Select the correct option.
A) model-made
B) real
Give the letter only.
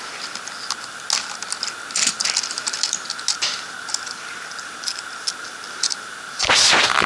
B